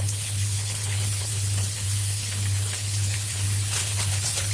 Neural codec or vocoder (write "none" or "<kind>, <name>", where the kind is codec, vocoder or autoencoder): codec, HILCodec